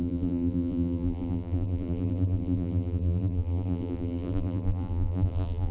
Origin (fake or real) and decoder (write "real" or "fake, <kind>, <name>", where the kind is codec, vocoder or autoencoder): fake, vocoder, BigVGAN v2